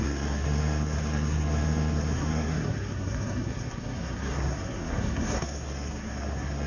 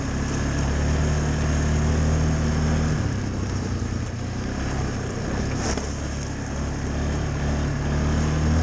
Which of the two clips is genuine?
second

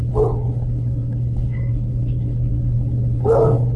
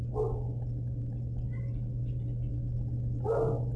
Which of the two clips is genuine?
second